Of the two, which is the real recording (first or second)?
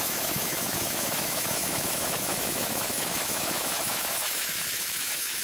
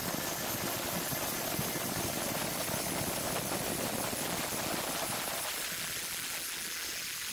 second